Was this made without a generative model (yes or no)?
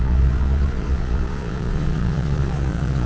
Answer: no